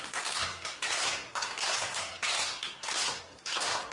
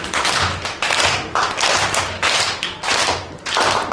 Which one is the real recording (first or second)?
second